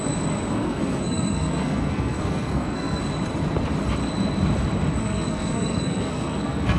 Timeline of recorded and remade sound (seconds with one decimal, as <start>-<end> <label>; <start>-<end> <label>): 0.0-0.5 recorded; 0.5-3.0 remade; 3.0-5.0 recorded; 5.0-6.8 remade